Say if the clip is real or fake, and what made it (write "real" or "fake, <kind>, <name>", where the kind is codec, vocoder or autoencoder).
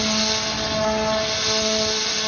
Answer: real